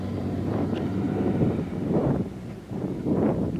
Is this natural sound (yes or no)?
no